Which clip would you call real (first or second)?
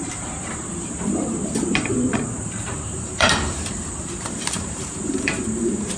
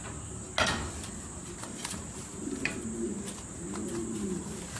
second